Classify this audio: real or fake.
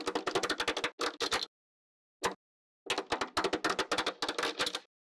real